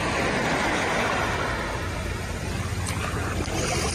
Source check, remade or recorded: recorded